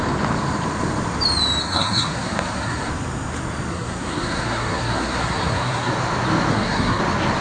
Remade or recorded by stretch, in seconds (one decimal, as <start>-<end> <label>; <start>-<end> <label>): 0.0-1.6 recorded; 1.6-2.9 remade; 2.9-3.7 recorded; 3.7-5.9 remade; 5.9-6.5 recorded; 6.5-7.0 remade; 7.0-7.4 recorded